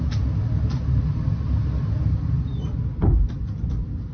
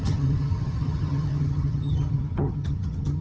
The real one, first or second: first